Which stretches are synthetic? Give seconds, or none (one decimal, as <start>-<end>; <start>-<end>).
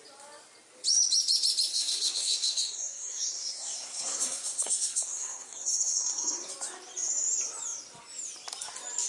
1.7-6.5